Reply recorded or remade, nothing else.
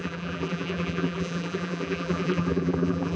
remade